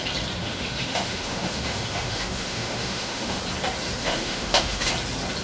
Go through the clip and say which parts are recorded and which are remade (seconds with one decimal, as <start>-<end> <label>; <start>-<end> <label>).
0.0-0.4 recorded; 0.4-3.4 remade; 3.4-4.0 recorded; 4.0-4.9 remade; 4.9-5.4 recorded

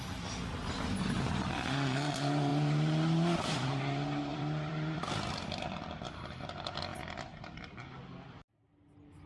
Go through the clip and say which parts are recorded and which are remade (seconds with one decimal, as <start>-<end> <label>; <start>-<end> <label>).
0.0-2.5 recorded; 2.5-3.8 remade; 3.8-4.3 recorded; 4.3-6.2 remade; 6.2-6.9 recorded; 6.9-8.0 remade; 8.0-9.3 recorded

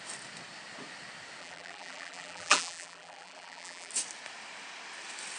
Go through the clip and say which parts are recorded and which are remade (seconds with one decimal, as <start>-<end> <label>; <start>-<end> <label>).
0.0-1.4 recorded; 1.4-3.9 remade; 3.9-5.4 recorded

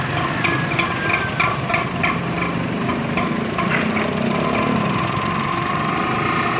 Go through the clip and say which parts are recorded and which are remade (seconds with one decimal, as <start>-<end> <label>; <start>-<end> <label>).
0.0-6.6 recorded

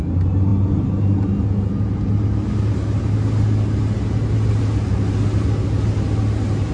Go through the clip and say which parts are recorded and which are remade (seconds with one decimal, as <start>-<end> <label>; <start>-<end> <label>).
0.0-6.7 recorded

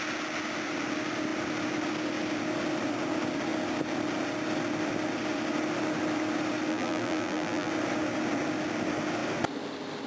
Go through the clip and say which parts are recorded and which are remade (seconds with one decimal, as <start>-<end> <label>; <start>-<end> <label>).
0.0-6.7 recorded; 6.7-7.7 remade; 7.7-10.1 recorded